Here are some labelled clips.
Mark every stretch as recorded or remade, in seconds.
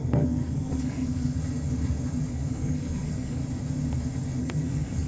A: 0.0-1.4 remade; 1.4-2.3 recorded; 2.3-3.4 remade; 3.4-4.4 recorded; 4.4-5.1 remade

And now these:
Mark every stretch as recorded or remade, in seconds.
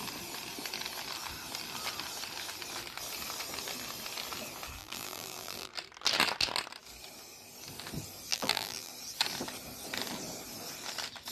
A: 0.0-4.8 recorded; 4.8-5.7 remade; 5.7-8.3 recorded; 8.3-8.9 remade; 8.9-11.3 recorded